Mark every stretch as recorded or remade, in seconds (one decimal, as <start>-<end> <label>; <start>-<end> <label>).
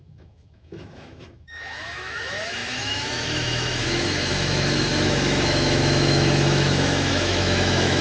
0.0-8.0 remade